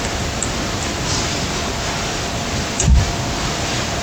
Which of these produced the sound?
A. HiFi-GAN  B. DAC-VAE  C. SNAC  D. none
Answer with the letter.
D